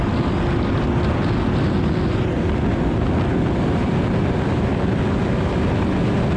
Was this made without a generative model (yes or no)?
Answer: yes